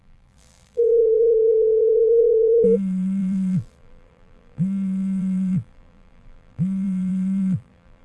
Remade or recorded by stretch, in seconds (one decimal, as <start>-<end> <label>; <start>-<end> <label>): 0.0-8.0 remade